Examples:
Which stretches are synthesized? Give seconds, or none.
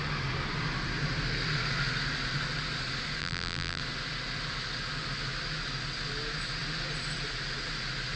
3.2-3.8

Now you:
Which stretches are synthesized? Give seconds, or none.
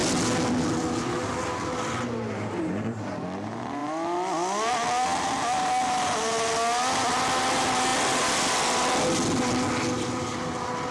none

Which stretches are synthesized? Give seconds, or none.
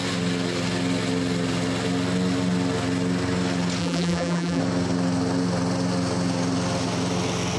3.8-4.6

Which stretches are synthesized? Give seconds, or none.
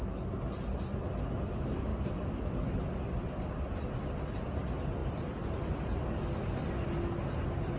1.9-3.5; 5.0-6.2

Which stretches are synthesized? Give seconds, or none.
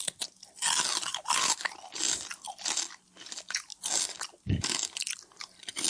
1.1-2.7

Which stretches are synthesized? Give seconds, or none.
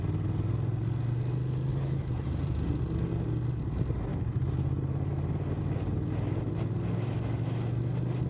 1.7-2.8